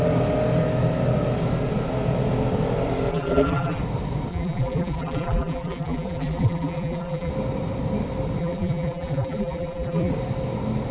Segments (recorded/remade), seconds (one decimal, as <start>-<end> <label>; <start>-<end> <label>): 0.0-3.1 recorded; 3.1-3.8 remade; 3.8-4.3 recorded; 4.3-7.3 remade; 7.3-8.4 recorded; 8.4-10.1 remade; 10.1-10.9 recorded